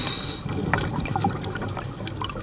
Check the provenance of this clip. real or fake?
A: real